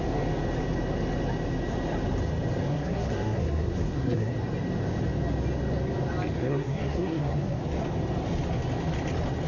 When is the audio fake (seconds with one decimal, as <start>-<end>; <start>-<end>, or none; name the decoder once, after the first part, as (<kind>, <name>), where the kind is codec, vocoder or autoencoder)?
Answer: 2.7-4.3 (codec, SNAC); 6.4-7.6